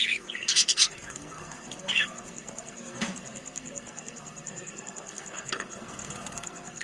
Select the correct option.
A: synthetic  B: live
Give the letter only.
A